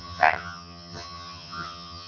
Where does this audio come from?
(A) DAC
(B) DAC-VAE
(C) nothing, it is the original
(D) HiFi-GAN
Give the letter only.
D